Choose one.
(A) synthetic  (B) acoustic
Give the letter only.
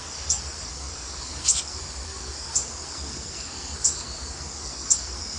A